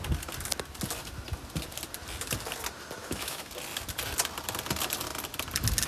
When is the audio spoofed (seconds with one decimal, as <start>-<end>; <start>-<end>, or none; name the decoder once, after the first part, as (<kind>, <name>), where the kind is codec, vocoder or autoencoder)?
3.0-3.5 (autoencoder, DAC-VAE)

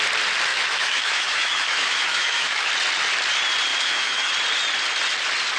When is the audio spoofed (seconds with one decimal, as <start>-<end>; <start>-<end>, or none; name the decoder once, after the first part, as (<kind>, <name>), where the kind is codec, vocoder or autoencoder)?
0.5-2.7 (autoencoder, DAC-VAE); 3.7-4.3